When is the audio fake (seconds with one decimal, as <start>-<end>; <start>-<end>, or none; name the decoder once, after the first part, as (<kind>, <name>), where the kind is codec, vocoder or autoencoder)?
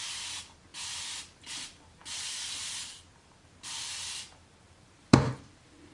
0.0-0.7 (vocoder, BigVGAN v2); 1.5-5.9